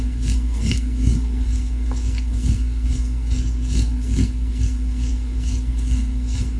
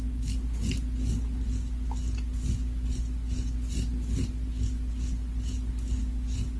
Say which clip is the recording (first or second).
second